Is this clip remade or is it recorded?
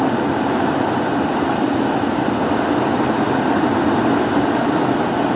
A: recorded